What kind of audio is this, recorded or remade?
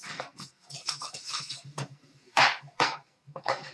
remade